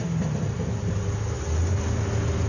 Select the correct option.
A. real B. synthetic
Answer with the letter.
A